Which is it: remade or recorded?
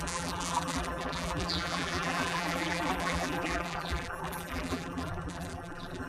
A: remade